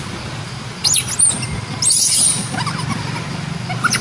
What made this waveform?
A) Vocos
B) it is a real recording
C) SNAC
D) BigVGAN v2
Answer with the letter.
B